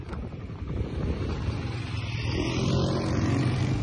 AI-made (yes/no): no